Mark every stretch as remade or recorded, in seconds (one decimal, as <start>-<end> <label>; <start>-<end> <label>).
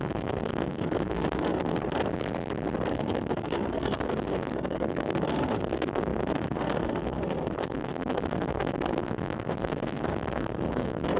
0.0-1.8 remade; 1.8-2.9 recorded; 2.9-11.2 remade